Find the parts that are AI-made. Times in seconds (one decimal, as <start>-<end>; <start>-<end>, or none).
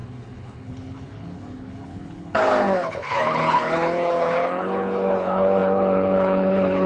0.0-6.9